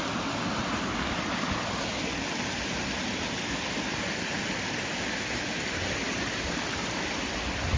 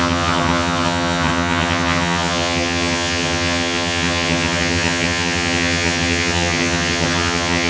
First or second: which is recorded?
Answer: first